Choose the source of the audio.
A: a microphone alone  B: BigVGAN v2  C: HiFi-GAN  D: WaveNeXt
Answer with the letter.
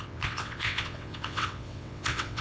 D